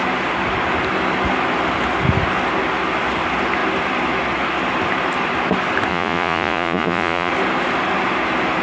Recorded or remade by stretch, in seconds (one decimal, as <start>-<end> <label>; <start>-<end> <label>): 0.0-5.9 recorded; 5.9-7.3 remade; 7.3-8.6 recorded